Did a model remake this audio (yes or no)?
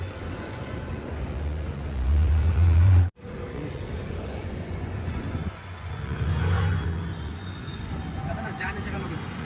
yes